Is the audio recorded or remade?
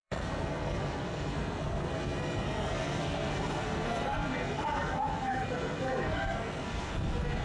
remade